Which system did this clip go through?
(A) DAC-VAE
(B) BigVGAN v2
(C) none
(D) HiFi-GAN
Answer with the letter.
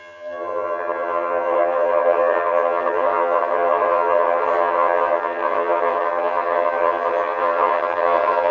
D